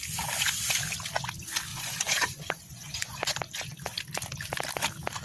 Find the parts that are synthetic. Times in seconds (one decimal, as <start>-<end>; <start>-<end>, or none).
1.7-3.3